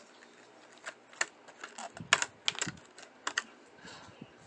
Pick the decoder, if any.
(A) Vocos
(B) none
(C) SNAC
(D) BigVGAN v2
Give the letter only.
B